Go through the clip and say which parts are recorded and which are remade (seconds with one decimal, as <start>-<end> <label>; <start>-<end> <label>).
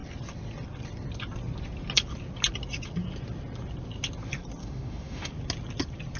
0.0-4.6 recorded; 4.6-5.3 remade; 5.3-6.2 recorded